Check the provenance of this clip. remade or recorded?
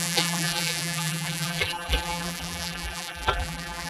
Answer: remade